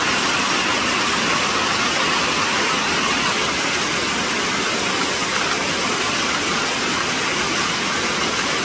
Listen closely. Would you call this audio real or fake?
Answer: real